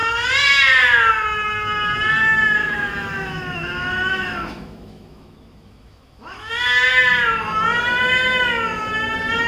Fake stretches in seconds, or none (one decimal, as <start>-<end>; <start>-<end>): 2.6-6.5